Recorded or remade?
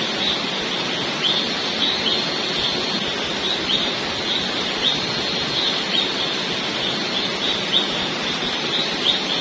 recorded